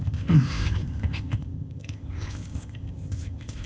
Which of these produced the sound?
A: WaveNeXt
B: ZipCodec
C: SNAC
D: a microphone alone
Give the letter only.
B